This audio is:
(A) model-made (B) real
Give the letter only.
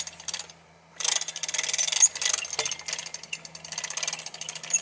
B